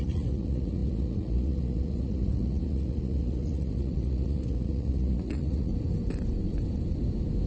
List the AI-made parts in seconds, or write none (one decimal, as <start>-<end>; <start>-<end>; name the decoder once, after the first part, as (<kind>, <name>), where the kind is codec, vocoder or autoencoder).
0.0-5.7 (vocoder, Vocos)